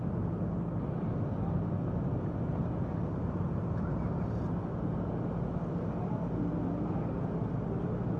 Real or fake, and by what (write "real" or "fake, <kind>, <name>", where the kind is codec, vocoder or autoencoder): real